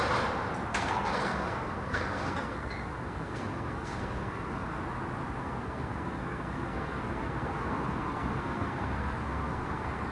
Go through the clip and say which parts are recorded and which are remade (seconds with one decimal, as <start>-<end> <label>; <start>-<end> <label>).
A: 0.0-0.7 recorded; 0.7-4.8 remade; 4.8-5.4 recorded; 5.4-10.1 remade